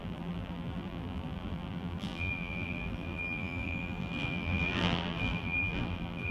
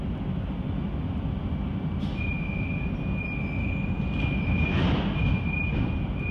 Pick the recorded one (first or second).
second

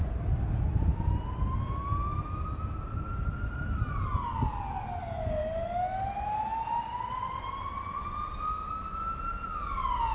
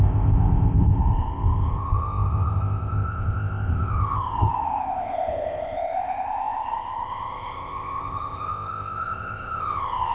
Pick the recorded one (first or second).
first